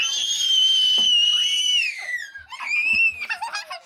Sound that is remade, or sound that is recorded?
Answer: remade